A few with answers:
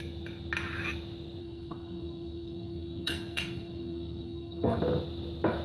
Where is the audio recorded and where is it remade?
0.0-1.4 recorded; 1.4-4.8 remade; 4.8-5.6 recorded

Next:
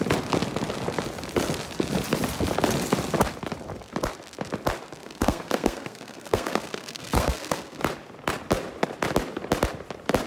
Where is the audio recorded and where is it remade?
0.0-5.0 recorded; 5.0-7.8 remade; 7.8-10.3 recorded

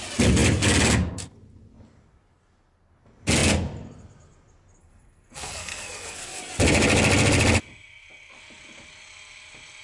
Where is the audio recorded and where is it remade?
0.0-4.8 recorded; 4.8-6.4 remade; 6.4-9.8 recorded

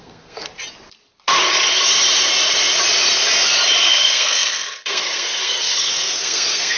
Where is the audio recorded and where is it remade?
0.0-0.5 remade; 0.5-3.8 recorded; 3.8-6.8 remade

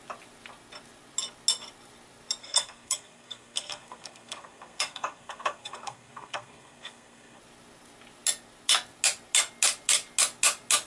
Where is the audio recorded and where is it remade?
0.0-2.4 recorded; 2.4-7.4 remade; 7.4-10.9 recorded

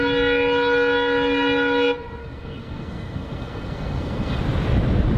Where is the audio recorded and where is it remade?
0.0-2.2 recorded; 2.2-4.4 remade; 4.4-5.2 recorded